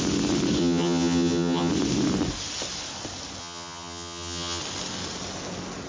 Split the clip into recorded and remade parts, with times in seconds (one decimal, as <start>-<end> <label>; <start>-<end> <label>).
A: 0.0-0.6 recorded; 0.6-1.7 remade; 1.7-3.4 recorded; 3.4-4.6 remade; 4.6-5.9 recorded